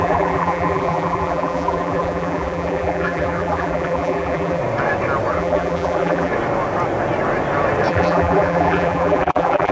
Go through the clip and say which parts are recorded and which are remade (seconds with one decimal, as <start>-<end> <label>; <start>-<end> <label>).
0.0-4.6 remade; 4.6-5.3 recorded; 5.3-6.3 remade; 6.3-7.9 recorded; 7.9-9.7 remade